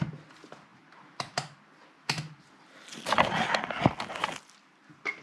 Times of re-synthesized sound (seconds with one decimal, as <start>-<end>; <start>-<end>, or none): none